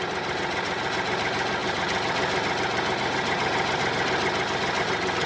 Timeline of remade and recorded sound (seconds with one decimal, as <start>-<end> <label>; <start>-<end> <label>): 0.0-5.3 recorded